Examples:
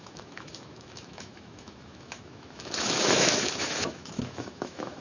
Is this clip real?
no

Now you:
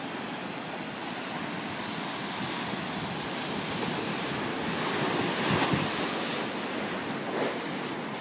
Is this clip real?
yes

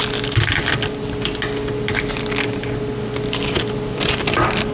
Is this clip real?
yes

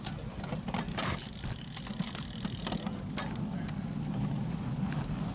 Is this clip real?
yes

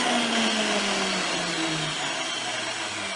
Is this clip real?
yes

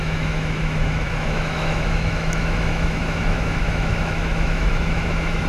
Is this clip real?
no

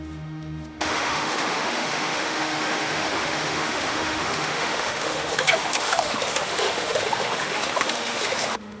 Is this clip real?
no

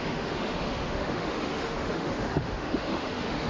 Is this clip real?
no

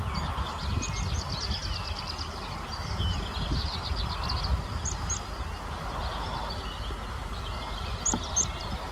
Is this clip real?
yes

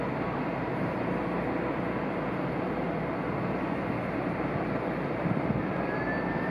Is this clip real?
yes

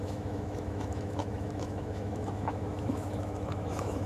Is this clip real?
no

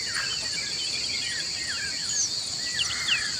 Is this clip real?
yes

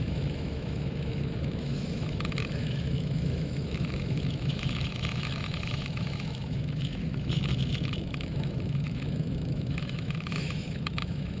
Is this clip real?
no